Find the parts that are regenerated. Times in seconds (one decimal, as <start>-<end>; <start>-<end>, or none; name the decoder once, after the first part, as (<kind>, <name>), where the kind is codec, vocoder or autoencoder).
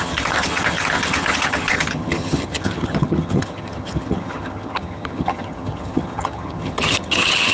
0.0-7.5 (vocoder, HiFi-GAN)